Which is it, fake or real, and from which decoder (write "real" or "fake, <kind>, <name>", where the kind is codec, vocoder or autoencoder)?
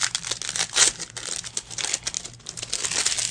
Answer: real